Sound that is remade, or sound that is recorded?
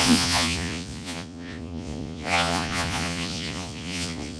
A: remade